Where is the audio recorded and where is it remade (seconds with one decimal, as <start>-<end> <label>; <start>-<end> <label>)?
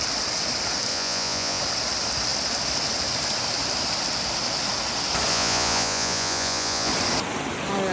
0.0-0.9 recorded; 0.9-1.6 remade; 1.6-5.3 recorded; 5.3-6.9 remade; 6.9-7.9 recorded